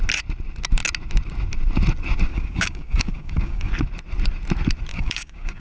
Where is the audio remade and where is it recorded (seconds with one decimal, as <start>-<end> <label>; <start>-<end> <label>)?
0.0-2.3 recorded; 2.3-3.7 remade; 3.7-4.9 recorded; 4.9-5.6 remade